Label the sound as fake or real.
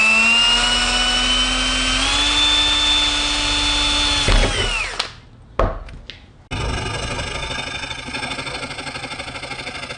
real